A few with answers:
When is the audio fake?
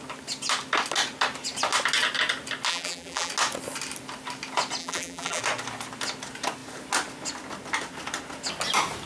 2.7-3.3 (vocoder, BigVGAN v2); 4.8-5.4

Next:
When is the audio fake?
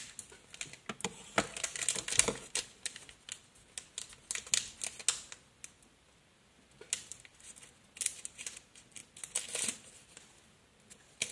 none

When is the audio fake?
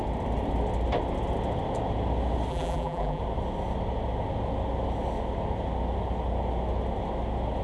2.5-3.2 (vocoder, BigVGAN v2)